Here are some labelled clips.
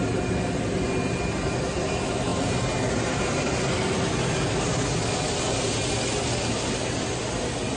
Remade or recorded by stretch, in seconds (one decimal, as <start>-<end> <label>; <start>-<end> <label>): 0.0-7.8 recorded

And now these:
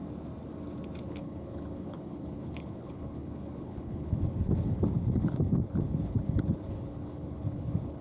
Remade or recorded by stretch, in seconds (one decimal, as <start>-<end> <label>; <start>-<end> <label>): 0.0-1.1 recorded; 1.1-8.0 remade

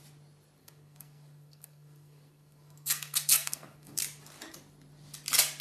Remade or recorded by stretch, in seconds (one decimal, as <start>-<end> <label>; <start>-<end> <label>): 0.0-0.6 recorded; 0.6-4.0 remade; 4.0-5.6 recorded

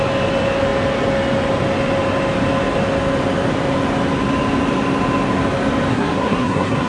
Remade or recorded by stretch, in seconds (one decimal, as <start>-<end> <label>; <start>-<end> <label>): 0.0-5.9 recorded; 5.9-6.9 remade

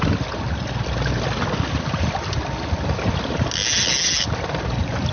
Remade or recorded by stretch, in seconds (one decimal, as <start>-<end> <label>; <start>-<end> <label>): 0.0-5.1 recorded

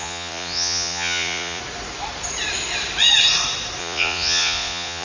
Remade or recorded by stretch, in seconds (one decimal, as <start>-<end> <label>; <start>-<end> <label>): 0.0-1.6 remade; 1.6-3.8 recorded; 3.8-5.0 remade